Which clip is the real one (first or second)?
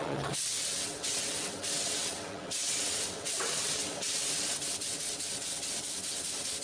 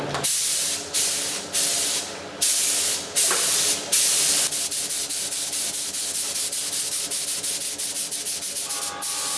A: second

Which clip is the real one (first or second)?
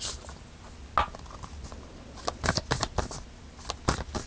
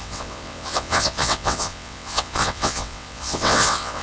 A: first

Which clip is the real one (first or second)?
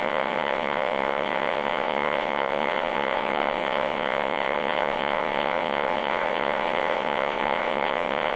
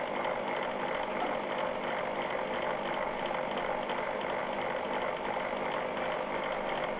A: second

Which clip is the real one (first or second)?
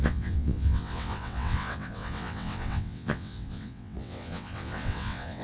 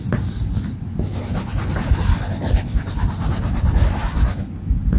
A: second